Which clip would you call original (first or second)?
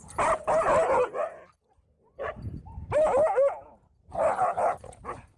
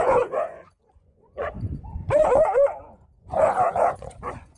first